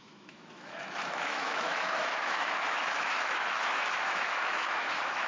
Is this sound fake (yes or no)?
yes